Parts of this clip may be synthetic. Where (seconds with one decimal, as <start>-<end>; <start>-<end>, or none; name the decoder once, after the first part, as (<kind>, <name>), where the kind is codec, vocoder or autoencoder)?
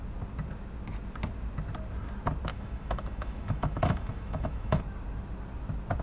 2.5-4.8 (autoencoder, DAC-VAE)